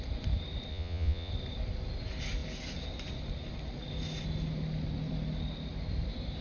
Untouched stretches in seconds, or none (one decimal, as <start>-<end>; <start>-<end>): 0.0-0.7; 1.3-6.4